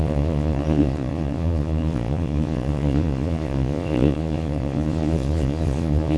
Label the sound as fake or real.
fake